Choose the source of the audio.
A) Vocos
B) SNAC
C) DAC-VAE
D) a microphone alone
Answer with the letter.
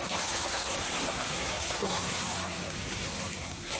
B